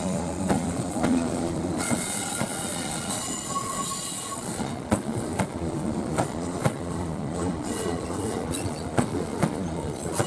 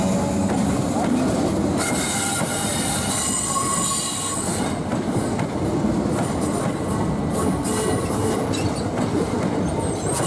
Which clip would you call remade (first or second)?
first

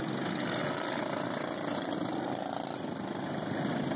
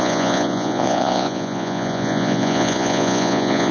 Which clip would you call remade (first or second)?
second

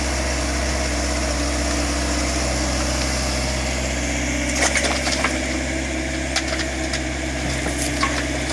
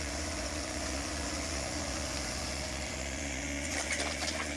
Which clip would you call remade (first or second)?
second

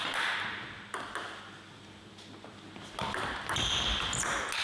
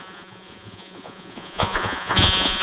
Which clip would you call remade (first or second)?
second